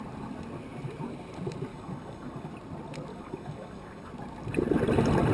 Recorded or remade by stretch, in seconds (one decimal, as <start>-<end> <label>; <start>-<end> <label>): 0.0-1.7 recorded; 1.7-2.5 remade; 2.5-3.1 recorded; 3.1-4.1 remade; 4.1-5.3 recorded